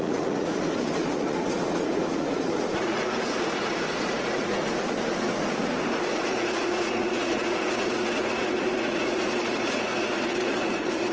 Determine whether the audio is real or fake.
fake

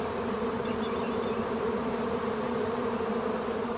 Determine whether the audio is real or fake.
fake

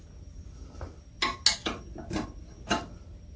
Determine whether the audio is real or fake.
real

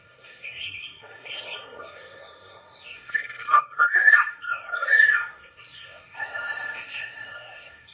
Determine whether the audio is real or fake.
fake